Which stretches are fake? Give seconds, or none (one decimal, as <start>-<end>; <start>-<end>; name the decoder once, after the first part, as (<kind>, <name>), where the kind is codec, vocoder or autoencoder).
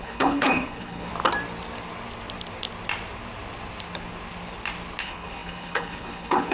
0.0-1.1 (codec, HILCodec); 5.0-6.5